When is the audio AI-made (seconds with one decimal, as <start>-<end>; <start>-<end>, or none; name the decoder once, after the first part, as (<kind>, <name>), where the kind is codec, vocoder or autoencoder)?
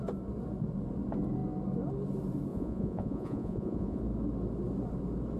2.5-4.0 (vocoder, Vocos)